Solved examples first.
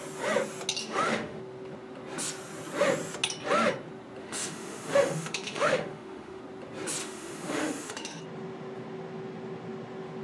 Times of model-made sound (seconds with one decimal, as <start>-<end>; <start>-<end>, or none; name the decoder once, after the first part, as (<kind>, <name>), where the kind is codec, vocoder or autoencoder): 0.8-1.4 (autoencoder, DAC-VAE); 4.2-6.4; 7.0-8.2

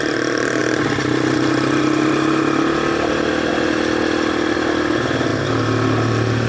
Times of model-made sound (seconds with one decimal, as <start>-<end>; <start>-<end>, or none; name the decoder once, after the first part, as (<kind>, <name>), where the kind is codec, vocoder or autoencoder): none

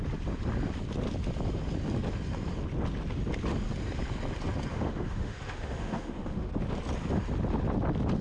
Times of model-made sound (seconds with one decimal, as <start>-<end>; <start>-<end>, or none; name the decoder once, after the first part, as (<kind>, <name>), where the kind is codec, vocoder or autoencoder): 4.7-6.5 (autoencoder, DAC-VAE)

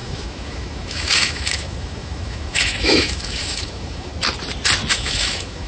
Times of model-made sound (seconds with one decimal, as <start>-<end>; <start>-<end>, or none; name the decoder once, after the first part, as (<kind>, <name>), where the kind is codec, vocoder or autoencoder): 0.0-4.1 (autoencoder, DAC-VAE); 4.9-5.7

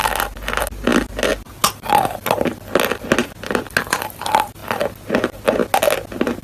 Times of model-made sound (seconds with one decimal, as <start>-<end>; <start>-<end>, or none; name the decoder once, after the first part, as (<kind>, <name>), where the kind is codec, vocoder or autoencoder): none

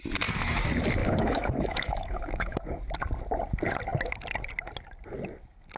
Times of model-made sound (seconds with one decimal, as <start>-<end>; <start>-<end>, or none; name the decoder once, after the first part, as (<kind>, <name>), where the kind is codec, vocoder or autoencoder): 1.0-2.6 (autoencoder, DAC-VAE)